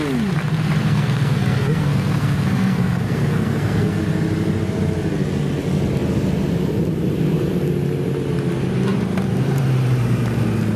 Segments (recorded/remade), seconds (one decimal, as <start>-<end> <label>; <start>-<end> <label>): 0.0-0.8 recorded; 0.8-4.0 remade; 4.0-10.8 recorded